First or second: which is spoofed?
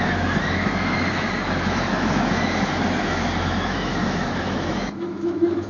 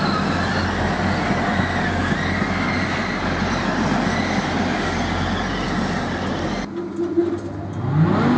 first